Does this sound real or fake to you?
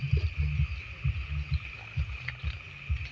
real